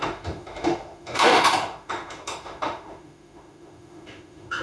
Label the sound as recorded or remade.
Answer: remade